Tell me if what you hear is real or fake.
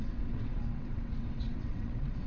fake